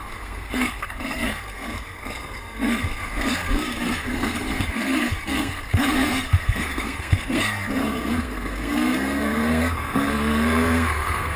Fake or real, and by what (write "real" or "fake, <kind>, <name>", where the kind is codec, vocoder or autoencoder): fake, codec, SNAC